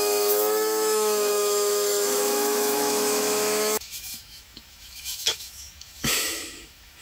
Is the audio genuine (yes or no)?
no